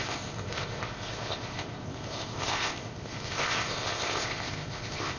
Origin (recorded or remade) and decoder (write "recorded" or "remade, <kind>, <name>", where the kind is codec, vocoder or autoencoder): remade, codec, ZipCodec